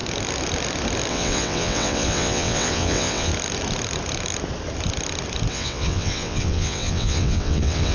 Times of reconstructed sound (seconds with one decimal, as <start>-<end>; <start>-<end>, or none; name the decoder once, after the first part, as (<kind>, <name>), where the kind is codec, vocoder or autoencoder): 1.1-3.3 (vocoder, WaveNeXt); 5.5-7.9